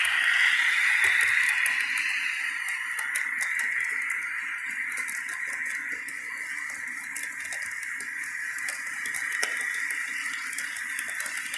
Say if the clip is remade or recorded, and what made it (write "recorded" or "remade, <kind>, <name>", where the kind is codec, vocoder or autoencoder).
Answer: recorded